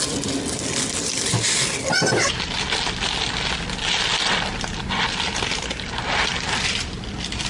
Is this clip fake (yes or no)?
no